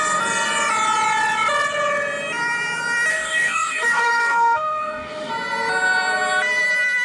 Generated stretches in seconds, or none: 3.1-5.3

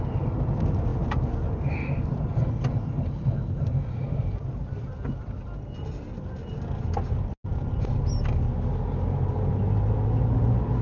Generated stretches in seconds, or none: none

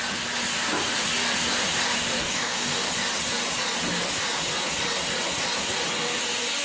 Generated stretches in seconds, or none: 2.2-2.9

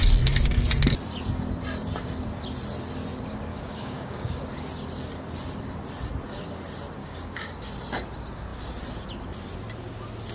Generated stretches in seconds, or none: 3.5-4.4; 7.0-7.7

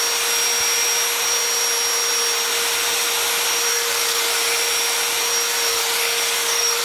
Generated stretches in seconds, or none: 3.7-4.3; 5.7-6.8

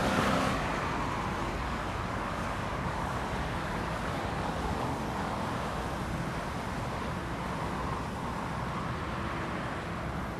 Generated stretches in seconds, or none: 0.0-0.7; 1.4-5.5

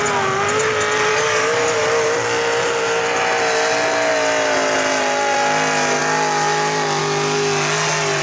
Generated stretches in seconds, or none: 1.1-1.8

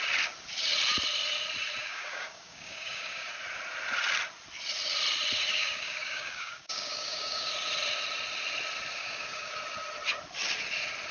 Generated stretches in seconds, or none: 1.8-3.3; 5.5-7.5; 9.0-9.5